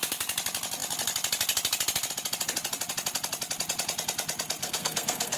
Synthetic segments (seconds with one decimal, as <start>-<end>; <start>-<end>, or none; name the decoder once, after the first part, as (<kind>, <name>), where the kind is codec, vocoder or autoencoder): 4.6-5.4 (codec, SNAC)